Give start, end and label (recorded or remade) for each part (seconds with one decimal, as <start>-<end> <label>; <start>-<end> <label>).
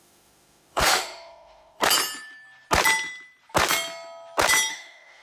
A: 0.0-1.8 remade; 1.8-4.7 recorded; 4.7-5.2 remade